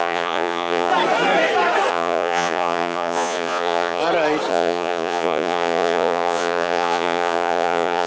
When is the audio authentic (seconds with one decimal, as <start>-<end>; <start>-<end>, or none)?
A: 0.9-1.9; 4.0-4.5